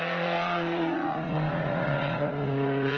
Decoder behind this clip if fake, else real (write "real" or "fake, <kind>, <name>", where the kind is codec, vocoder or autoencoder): fake, vocoder, Vocos